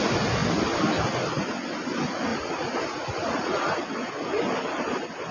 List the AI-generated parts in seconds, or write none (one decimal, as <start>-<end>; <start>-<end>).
2.3-3.8